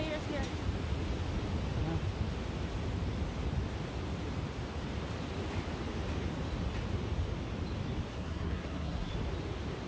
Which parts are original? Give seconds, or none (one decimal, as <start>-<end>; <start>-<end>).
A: 0.0-8.1; 9.1-9.9